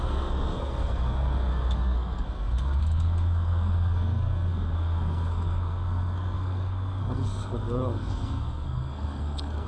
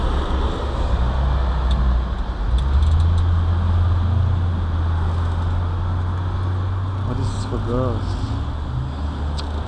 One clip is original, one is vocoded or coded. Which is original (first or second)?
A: second